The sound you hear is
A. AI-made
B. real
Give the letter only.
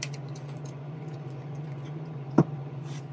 A